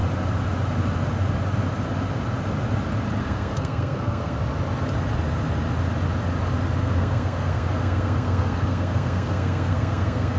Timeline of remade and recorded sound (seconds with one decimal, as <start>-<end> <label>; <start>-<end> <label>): 0.0-3.2 recorded; 3.2-4.4 remade; 4.4-6.8 recorded; 6.8-10.4 remade